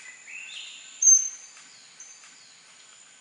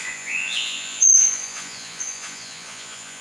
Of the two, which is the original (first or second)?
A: first